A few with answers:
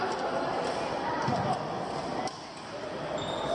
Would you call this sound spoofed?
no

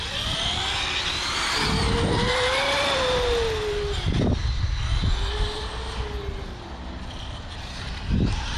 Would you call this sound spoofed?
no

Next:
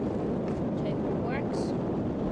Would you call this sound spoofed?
yes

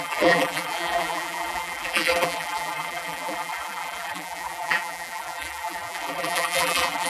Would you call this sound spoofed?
yes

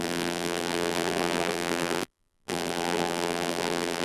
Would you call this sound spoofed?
yes